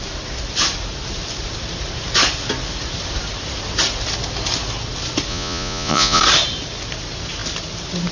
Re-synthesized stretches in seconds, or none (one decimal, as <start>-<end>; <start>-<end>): 5.3-6.2